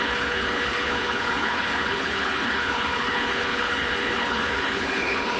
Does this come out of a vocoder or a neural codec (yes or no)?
yes